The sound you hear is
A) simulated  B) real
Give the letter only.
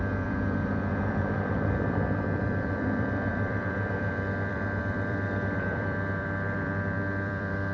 A